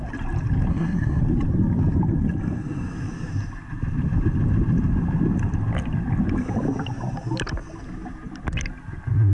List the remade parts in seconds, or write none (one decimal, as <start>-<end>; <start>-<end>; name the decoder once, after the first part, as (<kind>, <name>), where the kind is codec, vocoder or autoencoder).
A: 0.7-1.2 (codec, SNAC)